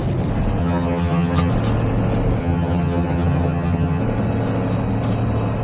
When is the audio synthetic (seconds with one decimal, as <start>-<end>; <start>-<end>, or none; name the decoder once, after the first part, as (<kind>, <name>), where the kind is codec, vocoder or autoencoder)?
0.6-1.5 (vocoder, HiFi-GAN); 2.4-4.0